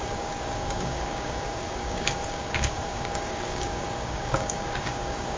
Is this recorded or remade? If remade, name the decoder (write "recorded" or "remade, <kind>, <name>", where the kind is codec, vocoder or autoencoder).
remade, codec, DAC